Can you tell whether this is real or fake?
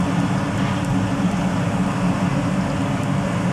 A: real